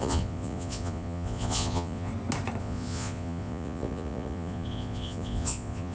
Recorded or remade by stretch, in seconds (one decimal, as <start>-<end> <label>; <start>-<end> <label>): 0.0-2.1 remade; 2.1-2.6 recorded; 2.6-5.9 remade